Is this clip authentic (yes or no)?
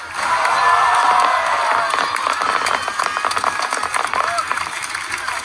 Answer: yes